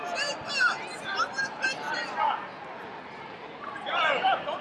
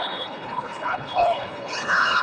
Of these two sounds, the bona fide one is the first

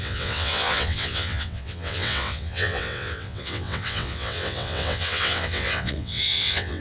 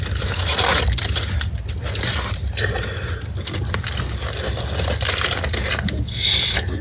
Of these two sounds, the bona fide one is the second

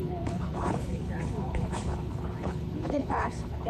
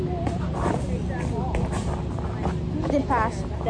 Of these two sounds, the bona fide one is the second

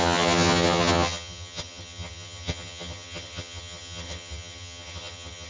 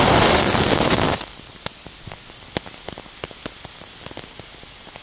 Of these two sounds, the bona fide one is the second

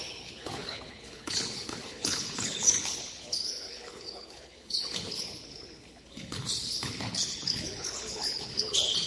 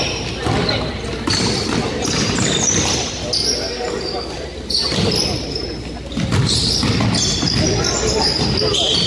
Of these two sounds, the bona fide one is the second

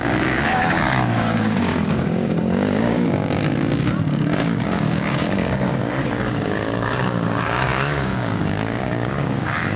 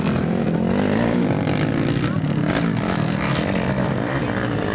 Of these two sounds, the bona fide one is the second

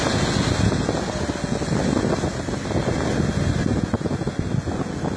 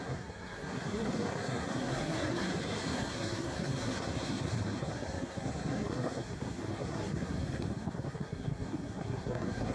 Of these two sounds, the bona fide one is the first